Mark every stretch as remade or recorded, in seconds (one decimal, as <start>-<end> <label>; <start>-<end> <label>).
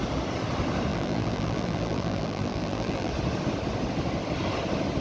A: 0.0-0.9 recorded; 0.9-3.1 remade; 3.1-5.0 recorded